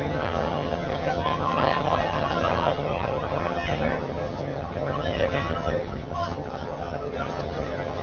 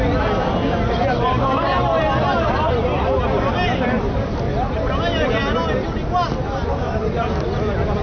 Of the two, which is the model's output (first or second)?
first